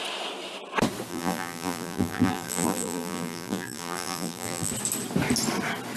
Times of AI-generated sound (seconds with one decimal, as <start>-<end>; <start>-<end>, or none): 1.1-4.7